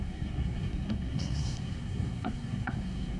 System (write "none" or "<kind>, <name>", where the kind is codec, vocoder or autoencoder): codec, SNAC